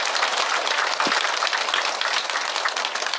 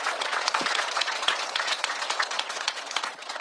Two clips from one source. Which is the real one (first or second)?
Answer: first